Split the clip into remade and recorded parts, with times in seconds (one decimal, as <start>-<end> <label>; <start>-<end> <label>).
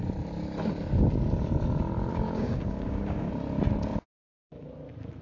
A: 0.0-2.1 recorded; 2.1-3.3 remade; 3.3-5.2 recorded